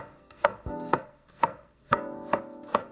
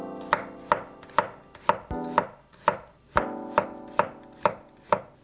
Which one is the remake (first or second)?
first